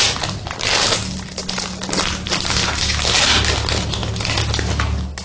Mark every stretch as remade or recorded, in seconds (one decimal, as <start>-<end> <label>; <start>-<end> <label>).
0.0-5.2 recorded